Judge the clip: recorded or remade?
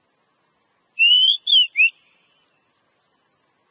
recorded